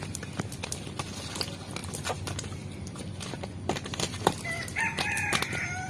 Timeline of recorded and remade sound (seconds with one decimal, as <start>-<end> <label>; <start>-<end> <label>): 0.0-5.9 recorded